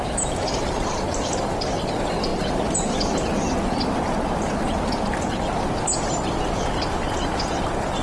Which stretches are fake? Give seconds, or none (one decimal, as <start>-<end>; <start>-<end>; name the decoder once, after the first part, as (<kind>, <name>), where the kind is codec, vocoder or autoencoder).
0.0-2.3 (vocoder, BigVGAN v2); 6.1-8.0